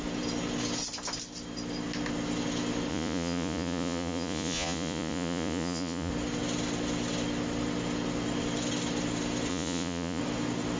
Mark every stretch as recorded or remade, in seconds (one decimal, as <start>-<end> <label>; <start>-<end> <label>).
0.0-2.9 recorded; 2.9-6.1 remade; 6.1-9.5 recorded; 9.5-10.2 remade; 10.2-10.8 recorded